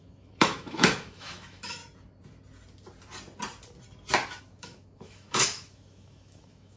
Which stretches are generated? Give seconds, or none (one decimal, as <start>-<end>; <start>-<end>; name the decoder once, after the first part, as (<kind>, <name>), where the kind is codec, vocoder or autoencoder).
0.0-1.8 (autoencoder, DAC-VAE); 4.4-6.8